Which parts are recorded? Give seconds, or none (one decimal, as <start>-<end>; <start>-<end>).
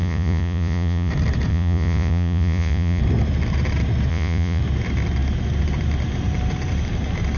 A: 1.1-1.5; 3.0-4.1; 4.6-7.4